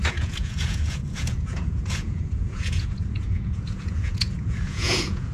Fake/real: fake